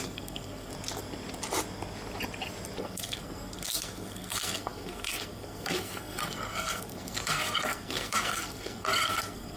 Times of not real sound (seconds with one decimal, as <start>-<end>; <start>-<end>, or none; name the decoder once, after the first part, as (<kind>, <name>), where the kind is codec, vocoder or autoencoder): 0.0-0.7 (codec, SNAC); 2.8-9.6